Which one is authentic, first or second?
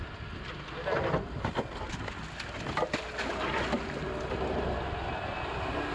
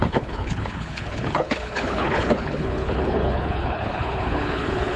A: first